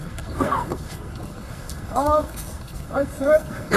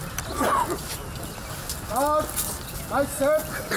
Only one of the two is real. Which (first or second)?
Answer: second